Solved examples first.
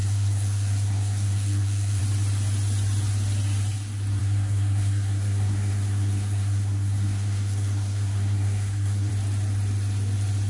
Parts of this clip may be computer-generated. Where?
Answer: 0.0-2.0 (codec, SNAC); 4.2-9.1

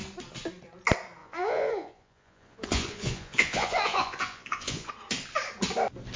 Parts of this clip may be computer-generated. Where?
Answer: 1.2-4.9 (vocoder, Vocos)